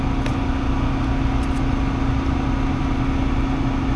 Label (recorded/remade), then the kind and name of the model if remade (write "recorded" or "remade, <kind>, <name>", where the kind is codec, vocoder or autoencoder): recorded